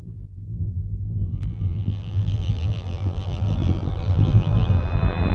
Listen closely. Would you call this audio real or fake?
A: fake